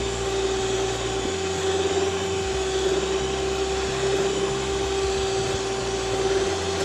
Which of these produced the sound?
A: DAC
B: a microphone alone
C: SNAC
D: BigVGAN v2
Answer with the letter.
B